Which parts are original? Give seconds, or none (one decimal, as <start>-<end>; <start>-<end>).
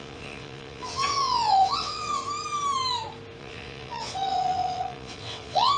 2.2-3.4